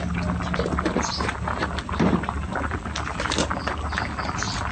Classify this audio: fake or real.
real